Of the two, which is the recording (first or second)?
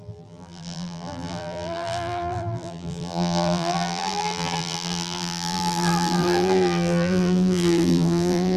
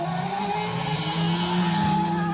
second